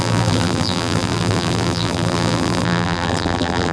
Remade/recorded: remade